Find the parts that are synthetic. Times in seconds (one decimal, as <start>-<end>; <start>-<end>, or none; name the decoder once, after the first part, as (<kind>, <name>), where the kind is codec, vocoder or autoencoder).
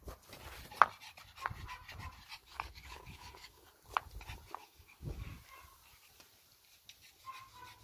2.4-3.7 (codec, DAC); 4.6-5.3